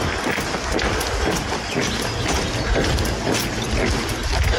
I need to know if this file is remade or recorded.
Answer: recorded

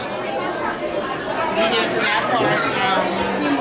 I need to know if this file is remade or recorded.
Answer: recorded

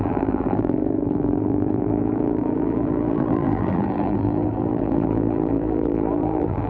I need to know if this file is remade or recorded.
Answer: remade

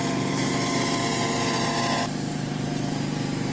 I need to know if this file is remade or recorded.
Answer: remade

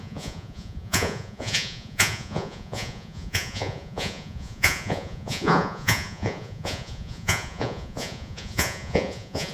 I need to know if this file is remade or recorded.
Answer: remade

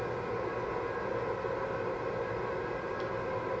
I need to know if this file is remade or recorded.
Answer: recorded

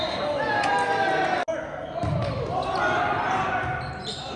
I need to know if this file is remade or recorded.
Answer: recorded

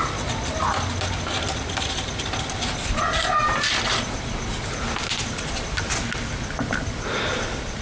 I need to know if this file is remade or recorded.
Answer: recorded